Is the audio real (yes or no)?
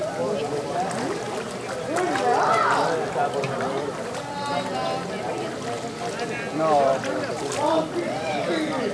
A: yes